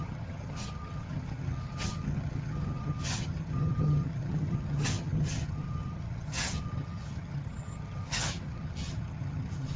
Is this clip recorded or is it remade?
remade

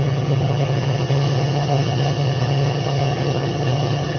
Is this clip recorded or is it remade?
remade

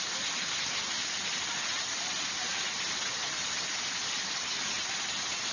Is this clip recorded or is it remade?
recorded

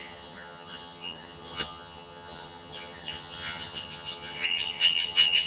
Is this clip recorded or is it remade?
remade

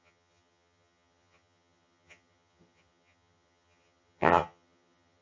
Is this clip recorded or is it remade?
remade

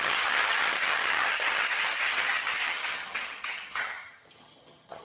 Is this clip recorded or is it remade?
remade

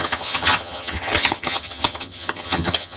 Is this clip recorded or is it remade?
remade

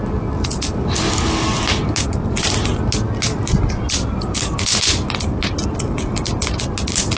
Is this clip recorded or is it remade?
recorded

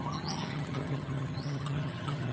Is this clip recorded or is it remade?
remade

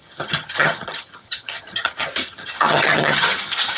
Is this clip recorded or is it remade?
remade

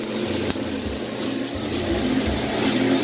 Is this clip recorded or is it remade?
recorded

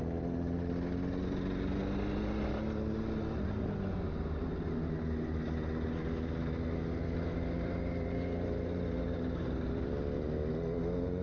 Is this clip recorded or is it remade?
recorded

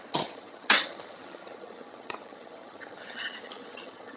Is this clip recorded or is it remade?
remade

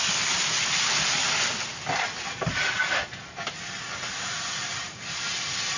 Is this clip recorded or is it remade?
recorded